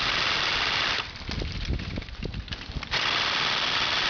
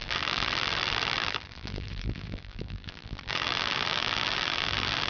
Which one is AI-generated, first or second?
second